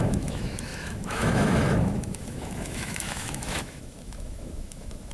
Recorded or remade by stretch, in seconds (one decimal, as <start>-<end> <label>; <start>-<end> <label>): 0.0-5.1 remade